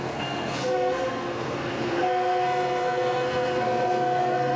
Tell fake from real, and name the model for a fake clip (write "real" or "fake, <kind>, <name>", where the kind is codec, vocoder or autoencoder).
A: fake, codec, SNAC